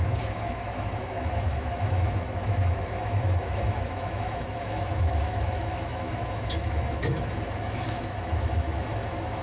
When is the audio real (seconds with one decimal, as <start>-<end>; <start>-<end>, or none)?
none